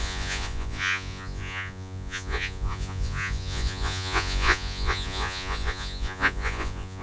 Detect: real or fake fake